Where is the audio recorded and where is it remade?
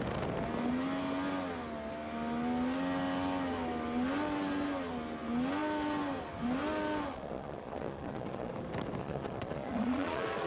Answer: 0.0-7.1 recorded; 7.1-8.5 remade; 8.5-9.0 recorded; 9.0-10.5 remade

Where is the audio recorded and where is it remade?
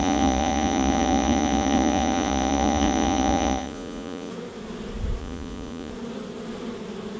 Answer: 0.0-4.3 remade; 4.3-5.2 recorded; 5.2-5.9 remade; 5.9-7.2 recorded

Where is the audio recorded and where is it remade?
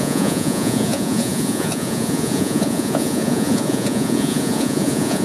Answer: 0.0-5.2 remade